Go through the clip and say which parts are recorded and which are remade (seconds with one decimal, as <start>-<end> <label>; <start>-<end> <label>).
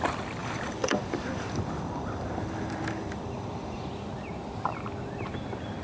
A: 0.0-0.4 recorded; 0.4-3.9 remade; 3.9-5.8 recorded